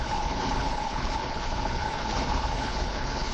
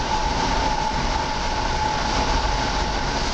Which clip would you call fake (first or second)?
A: first